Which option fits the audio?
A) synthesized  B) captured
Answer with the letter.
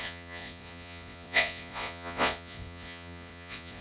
A